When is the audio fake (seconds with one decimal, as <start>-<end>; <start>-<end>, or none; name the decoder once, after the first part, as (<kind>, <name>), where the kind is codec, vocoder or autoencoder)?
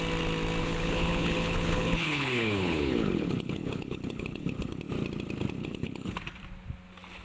0.6-4.8 (codec, HILCodec); 5.6-6.2